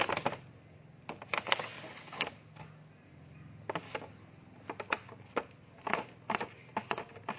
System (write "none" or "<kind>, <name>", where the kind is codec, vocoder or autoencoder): none